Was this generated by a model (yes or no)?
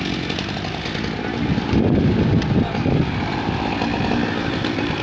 no